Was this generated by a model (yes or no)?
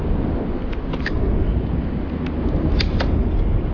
no